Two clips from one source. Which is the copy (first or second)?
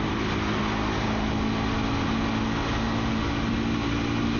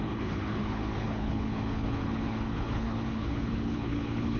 second